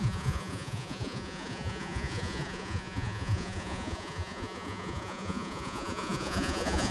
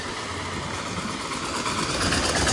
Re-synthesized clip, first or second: first